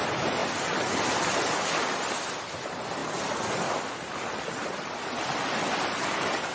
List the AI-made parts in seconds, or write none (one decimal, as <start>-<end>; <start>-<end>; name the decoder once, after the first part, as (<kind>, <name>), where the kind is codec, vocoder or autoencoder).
none